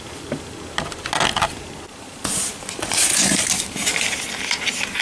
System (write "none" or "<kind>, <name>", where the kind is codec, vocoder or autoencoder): none